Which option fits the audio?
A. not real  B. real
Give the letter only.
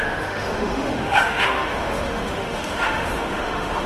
A